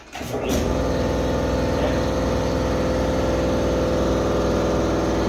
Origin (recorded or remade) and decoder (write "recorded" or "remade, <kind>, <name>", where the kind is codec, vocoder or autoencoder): recorded